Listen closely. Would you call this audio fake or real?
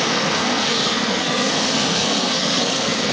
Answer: fake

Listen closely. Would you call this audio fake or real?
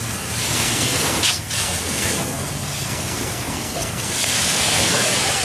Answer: fake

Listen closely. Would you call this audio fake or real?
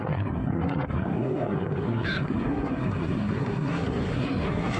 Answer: fake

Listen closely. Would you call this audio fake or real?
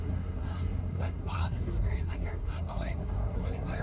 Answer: fake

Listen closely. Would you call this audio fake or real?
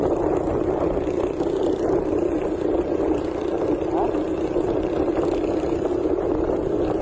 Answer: real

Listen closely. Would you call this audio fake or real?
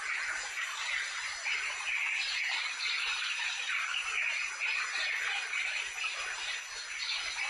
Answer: real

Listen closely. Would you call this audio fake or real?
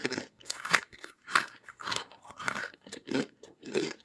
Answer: fake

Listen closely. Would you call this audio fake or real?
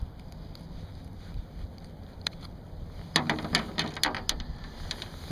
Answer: real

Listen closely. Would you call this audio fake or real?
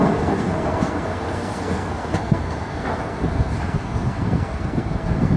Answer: fake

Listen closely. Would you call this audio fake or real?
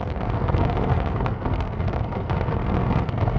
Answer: fake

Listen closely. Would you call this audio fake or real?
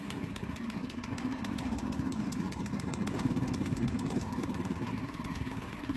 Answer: fake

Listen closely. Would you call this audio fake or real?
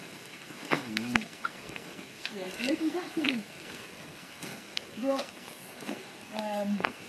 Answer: fake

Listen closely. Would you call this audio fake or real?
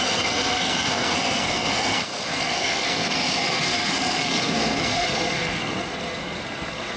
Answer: fake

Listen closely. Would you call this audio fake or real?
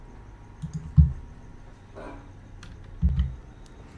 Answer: real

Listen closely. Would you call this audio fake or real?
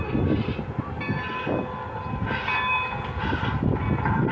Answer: real